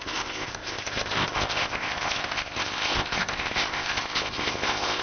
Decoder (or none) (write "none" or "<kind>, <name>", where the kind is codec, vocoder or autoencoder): codec, ZipCodec